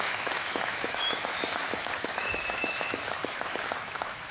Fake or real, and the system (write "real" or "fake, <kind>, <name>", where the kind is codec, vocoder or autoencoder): fake, autoencoder, DAC-VAE